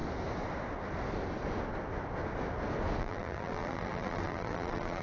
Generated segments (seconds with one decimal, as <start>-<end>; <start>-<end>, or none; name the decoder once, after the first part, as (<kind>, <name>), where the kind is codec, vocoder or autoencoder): 3.0-5.0 (vocoder, BigVGAN v2)